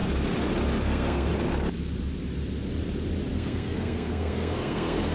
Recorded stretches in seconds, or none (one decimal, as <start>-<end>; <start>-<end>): 0.0-0.8; 1.3-3.3